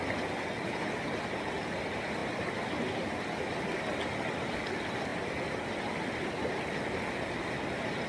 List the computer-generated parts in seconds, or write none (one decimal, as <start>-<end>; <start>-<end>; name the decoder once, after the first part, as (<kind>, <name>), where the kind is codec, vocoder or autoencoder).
none

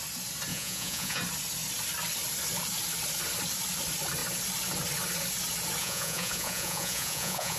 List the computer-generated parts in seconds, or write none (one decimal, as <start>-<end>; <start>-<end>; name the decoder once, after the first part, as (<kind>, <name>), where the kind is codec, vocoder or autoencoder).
0.5-1.2 (vocoder, Vocos); 5.8-7.6

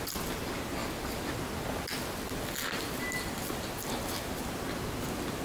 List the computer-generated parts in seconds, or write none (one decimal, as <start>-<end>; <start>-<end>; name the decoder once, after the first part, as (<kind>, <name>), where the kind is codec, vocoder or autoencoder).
none

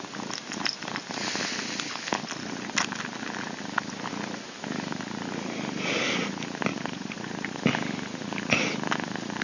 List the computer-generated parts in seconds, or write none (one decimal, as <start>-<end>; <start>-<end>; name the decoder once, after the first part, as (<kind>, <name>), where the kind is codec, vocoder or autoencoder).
6.7-7.6 (vocoder, Vocos)

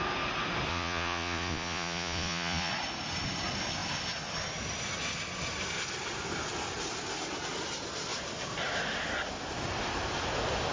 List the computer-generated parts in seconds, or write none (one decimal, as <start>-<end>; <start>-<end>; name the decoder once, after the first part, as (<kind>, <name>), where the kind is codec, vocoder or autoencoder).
0.7-2.7 (vocoder, Vocos)

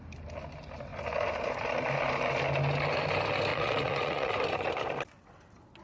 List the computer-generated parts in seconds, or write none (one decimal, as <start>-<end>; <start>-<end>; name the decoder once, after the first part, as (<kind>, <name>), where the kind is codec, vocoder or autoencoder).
3.5-4.3 (vocoder, Vocos)

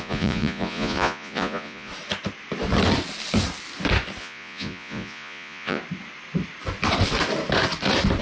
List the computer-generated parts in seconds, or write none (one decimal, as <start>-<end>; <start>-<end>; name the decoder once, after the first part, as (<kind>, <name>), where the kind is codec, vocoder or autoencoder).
0.0-1.9 (vocoder, Vocos); 4.2-5.8